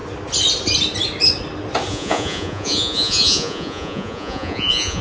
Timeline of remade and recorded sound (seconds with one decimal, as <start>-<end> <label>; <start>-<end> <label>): 0.0-1.9 recorded; 1.9-5.0 remade